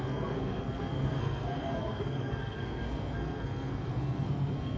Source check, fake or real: fake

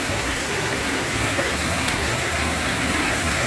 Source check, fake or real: fake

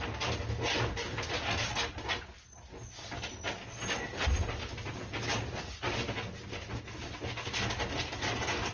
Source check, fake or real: real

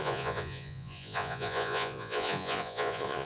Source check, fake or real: fake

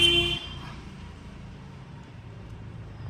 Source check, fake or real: fake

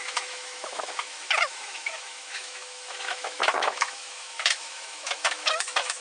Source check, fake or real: fake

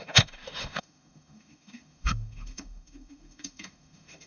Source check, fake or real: fake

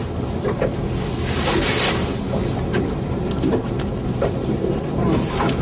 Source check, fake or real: real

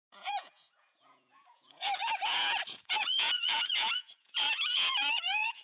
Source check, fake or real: fake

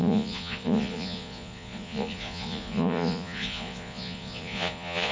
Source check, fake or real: fake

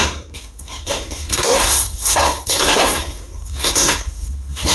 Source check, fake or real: fake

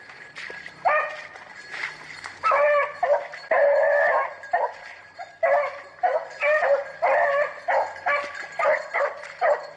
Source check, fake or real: real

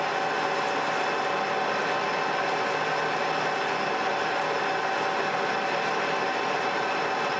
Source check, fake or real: real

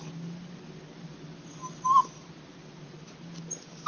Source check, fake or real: real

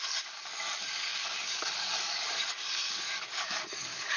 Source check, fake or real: fake